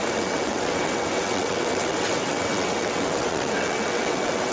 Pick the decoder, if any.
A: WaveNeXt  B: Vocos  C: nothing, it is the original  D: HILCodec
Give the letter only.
A